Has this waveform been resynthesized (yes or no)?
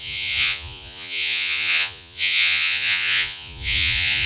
yes